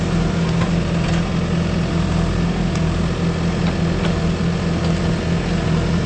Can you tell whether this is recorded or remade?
recorded